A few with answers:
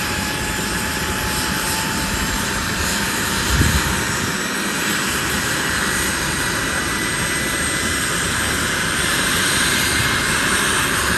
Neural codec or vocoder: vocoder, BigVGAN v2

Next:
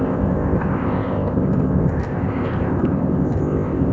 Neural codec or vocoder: codec, ZipCodec